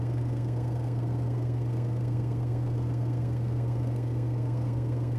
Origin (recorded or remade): remade